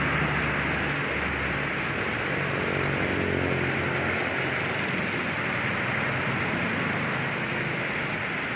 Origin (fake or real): real